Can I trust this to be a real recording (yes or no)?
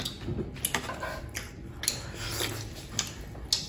yes